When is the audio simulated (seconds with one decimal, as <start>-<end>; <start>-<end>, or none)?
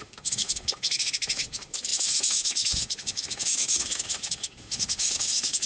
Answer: 0.0-5.7